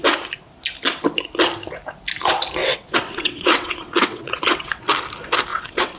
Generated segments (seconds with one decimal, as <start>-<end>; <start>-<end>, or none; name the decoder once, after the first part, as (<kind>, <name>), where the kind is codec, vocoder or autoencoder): 2.6-4.8 (vocoder, WaveNeXt); 5.5-6.0